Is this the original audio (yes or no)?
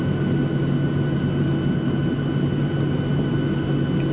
yes